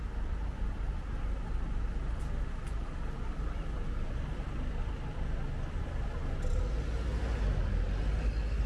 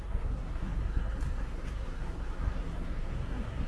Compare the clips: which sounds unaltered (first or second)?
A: first